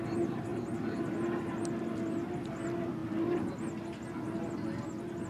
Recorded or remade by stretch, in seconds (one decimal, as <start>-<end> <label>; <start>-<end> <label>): 0.0-5.3 recorded